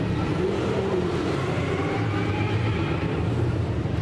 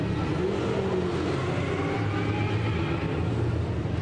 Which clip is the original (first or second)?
second